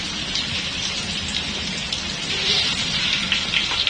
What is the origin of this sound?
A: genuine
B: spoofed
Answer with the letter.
A